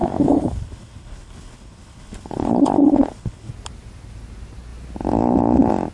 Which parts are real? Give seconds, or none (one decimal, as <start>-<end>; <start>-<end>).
3.5-5.9